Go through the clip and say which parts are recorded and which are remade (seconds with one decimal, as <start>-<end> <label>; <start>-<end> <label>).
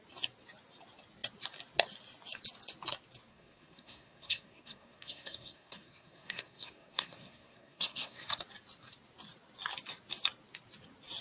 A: 0.0-3.3 recorded; 3.3-8.3 remade; 8.3-11.2 recorded